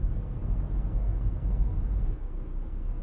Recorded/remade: remade